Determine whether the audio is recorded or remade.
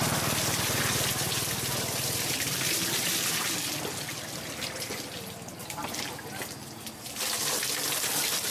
recorded